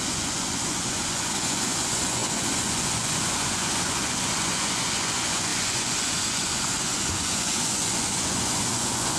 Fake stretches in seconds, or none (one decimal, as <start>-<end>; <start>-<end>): 0.0-9.2